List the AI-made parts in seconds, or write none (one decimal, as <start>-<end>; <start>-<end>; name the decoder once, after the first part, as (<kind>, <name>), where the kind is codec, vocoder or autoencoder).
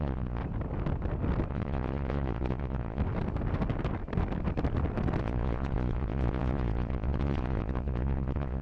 0.0-0.4 (vocoder, Vocos); 1.5-3.0; 5.2-8.6